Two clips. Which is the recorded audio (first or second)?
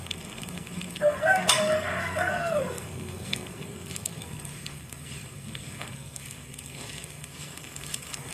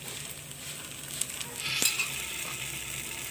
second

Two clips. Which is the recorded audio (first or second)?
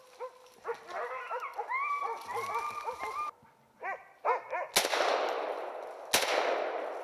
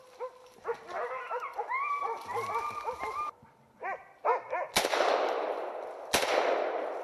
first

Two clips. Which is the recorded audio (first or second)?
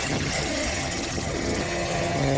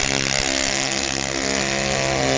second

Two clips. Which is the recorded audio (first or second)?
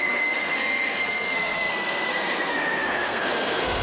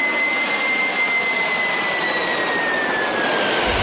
second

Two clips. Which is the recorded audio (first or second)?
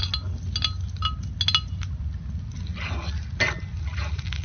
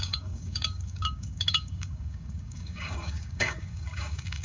first